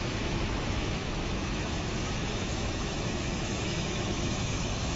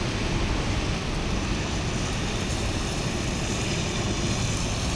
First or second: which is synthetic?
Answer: first